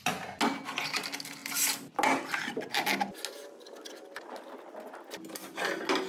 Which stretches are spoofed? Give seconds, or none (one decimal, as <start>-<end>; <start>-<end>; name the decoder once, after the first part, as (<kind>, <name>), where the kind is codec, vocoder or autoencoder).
none